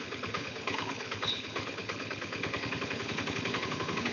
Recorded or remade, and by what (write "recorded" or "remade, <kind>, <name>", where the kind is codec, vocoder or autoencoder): remade, codec, HILCodec